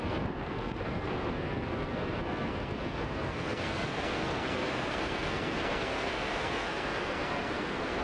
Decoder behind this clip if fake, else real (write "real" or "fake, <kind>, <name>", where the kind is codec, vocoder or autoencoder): fake, codec, SNAC